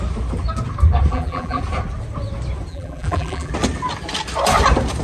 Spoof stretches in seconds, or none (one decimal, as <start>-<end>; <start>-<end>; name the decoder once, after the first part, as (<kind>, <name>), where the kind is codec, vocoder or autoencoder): 1.1-1.6 (vocoder, BigVGAN v2); 2.7-3.5